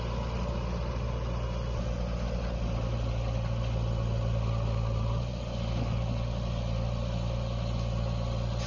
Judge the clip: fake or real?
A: real